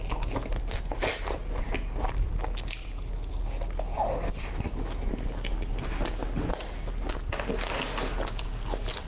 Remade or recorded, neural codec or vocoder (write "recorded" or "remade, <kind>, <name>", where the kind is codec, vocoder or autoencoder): recorded